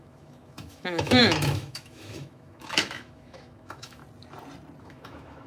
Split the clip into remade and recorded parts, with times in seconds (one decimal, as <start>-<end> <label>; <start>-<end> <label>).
0.0-4.0 remade; 4.0-4.8 recorded; 4.8-5.5 remade